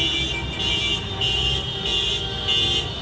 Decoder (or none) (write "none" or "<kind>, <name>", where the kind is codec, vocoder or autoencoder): none